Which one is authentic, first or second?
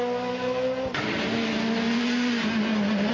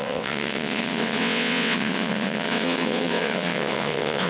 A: first